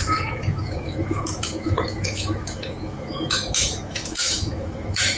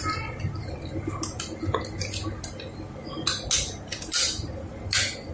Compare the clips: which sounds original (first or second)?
second